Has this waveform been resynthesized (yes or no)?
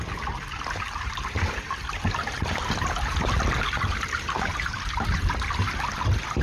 no